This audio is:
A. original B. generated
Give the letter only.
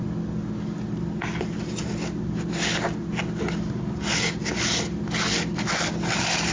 A